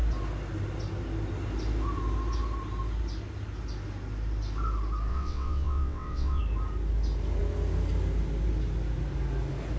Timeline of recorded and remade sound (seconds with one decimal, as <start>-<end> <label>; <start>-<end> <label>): 0.0-5.1 recorded; 5.1-6.4 remade; 6.4-9.8 recorded